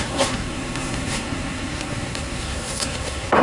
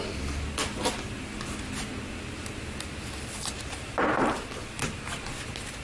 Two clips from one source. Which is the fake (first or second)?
first